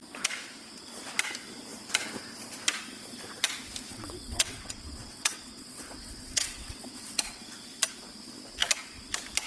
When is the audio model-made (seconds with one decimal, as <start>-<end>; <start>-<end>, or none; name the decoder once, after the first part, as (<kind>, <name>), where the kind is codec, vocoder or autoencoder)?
3.9-7.4 (vocoder, WaveNeXt)